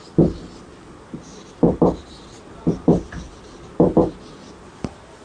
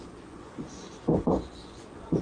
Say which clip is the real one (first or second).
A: first